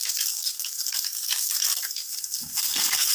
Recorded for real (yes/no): no